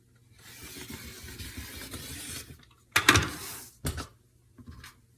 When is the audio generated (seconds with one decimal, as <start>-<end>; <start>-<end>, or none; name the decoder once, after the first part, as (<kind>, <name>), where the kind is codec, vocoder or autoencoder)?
none